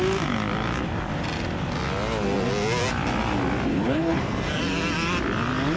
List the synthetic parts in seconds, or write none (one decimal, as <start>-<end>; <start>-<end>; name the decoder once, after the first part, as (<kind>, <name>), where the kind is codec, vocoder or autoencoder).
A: 3.7-4.2 (codec, HILCodec)